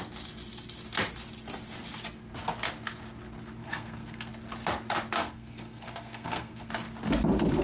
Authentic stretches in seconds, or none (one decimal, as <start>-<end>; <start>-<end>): 0.0-3.6; 4.3-5.2; 6.7-7.6